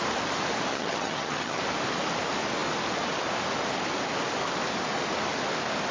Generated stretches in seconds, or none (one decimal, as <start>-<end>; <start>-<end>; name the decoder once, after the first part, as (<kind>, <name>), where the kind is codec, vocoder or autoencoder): 0.7-1.6 (vocoder, HiFi-GAN)